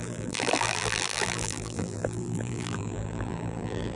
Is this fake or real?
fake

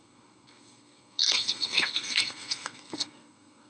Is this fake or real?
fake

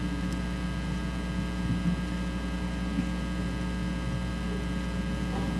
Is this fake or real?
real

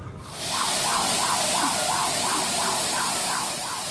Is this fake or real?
real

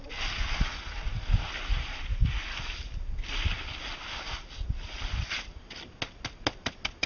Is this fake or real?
real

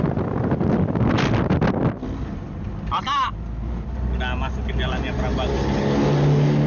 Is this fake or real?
real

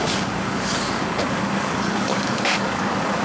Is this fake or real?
fake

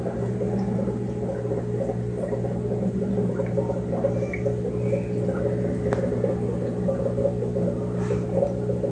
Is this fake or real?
real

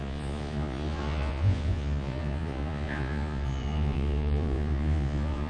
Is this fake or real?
fake